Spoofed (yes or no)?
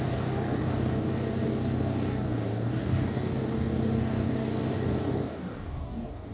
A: yes